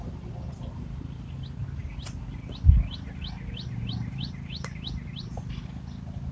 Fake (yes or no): no